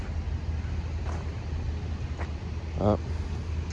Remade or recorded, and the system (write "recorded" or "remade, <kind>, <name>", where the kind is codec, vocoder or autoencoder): recorded